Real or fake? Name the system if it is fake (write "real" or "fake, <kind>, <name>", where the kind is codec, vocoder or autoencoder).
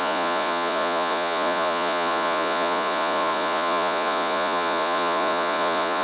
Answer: fake, vocoder, Vocos